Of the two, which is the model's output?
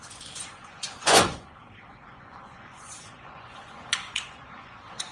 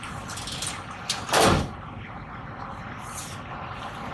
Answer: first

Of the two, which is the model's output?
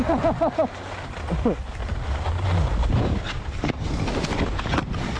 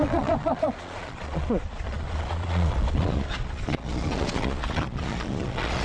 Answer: second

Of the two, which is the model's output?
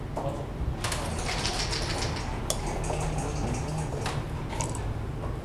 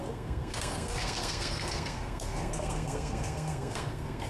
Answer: second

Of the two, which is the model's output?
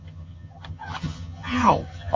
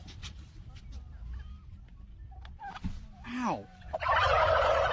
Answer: first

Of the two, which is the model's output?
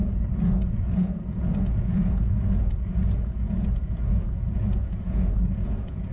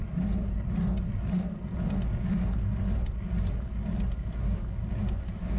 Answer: first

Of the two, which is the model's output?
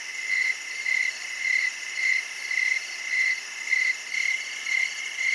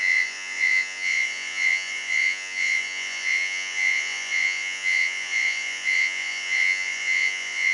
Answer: second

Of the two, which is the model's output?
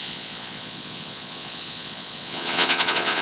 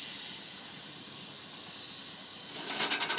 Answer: first